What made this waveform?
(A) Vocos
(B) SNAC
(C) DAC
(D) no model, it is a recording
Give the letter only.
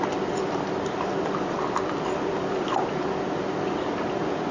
D